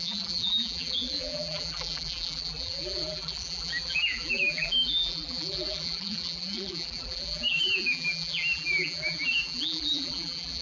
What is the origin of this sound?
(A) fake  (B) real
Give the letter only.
A